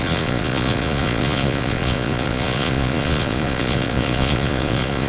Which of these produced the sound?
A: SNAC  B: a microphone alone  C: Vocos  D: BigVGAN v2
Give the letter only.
C